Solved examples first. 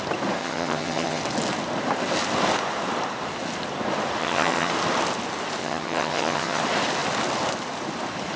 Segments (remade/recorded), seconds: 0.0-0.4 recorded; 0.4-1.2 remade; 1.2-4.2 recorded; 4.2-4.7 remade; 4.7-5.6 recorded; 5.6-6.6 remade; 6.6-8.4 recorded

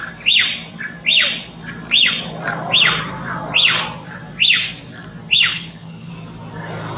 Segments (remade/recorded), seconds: 0.0-5.5 recorded; 5.5-6.1 remade; 6.1-7.0 recorded

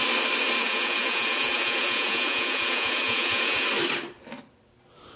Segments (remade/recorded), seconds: 0.0-0.6 recorded; 0.6-3.7 remade; 3.7-5.2 recorded

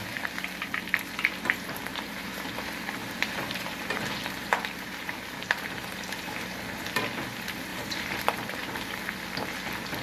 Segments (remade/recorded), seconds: 0.0-1.9 recorded; 1.9-2.5 remade; 2.5-3.0 recorded; 3.0-6.4 remade; 6.4-7.7 recorded; 7.7-8.2 remade; 8.2-10.0 recorded

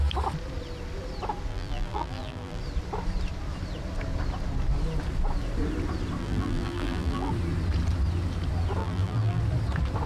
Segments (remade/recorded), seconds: 0.0-1.5 recorded; 1.5-2.6 remade; 2.6-6.2 recorded; 6.2-7.3 remade; 7.3-8.8 recorded; 8.8-9.4 remade; 9.4-10.1 recorded